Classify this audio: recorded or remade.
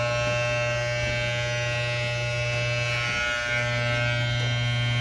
recorded